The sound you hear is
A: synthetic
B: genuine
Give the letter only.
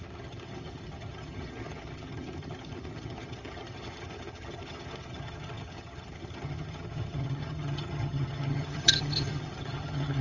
A